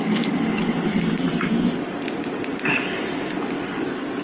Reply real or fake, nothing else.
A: real